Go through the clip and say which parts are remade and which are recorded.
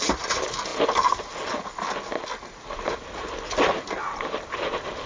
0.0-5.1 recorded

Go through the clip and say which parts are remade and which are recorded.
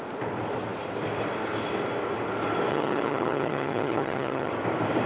0.0-2.7 recorded; 2.7-4.5 remade; 4.5-5.1 recorded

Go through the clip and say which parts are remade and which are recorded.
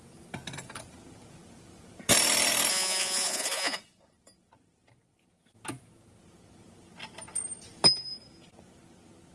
0.0-2.7 recorded; 2.7-3.8 remade; 3.8-9.3 recorded